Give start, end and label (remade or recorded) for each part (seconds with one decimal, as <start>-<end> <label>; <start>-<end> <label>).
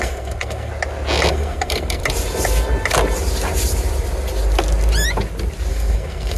0.0-0.7 remade; 0.7-1.3 recorded; 1.3-2.0 remade; 2.0-5.7 recorded; 5.7-6.4 remade